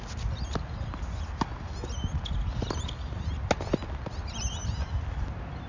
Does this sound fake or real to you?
real